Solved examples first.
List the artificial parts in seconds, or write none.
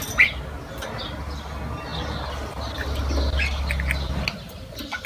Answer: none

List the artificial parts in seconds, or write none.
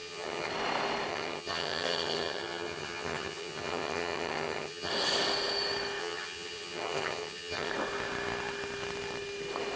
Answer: 0.0-0.5; 1.1-4.9; 6.0-7.7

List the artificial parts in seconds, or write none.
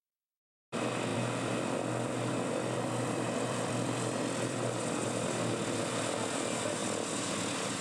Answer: 1.1-5.8